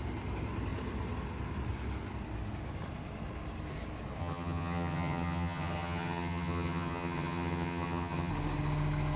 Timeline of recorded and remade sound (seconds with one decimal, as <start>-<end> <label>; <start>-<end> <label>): 0.0-4.2 recorded; 4.2-8.3 remade; 8.3-9.2 recorded